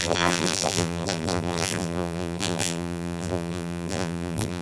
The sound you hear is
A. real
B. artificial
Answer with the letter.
B